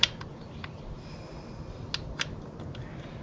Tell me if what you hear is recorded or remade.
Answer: recorded